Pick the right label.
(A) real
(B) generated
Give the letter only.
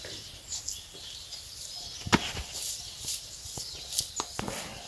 A